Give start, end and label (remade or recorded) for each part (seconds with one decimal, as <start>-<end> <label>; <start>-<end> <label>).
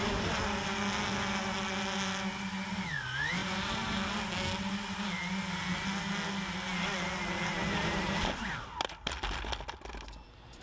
0.0-10.6 recorded